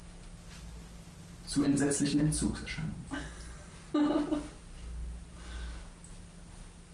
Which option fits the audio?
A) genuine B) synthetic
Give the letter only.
A